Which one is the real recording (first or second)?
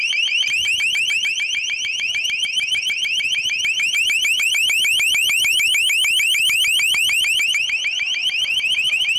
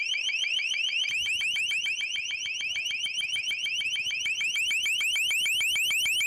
second